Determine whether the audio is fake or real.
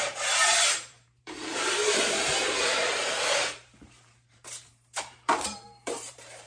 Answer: fake